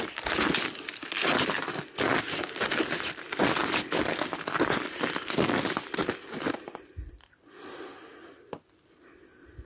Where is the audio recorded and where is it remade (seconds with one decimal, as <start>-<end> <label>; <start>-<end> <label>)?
0.0-3.6 remade; 3.6-4.9 recorded; 4.9-9.6 remade